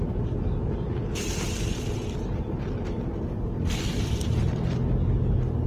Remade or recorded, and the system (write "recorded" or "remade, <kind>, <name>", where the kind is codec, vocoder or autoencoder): recorded